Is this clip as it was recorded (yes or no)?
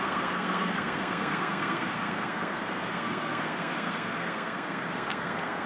no